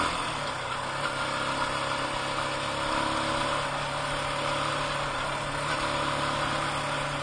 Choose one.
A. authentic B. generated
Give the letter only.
A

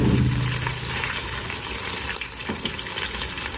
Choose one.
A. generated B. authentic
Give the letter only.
B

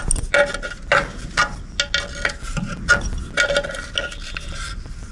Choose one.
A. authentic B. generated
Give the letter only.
A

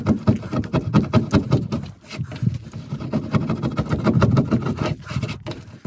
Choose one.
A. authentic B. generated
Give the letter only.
A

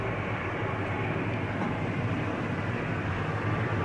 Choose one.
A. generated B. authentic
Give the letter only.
B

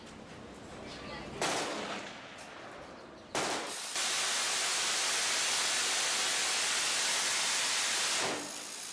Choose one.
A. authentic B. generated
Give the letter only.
A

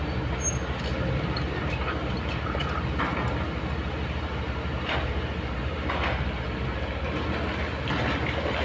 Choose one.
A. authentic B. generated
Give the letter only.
A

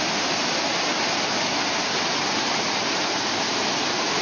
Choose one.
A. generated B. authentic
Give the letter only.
B